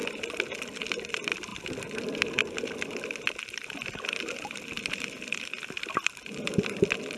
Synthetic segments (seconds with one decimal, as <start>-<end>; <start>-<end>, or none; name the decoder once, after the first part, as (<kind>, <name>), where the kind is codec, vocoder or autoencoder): 0.0-7.2 (vocoder, BigVGAN v2)